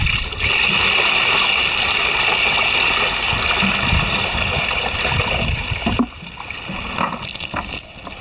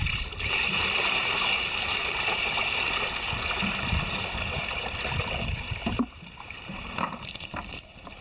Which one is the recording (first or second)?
first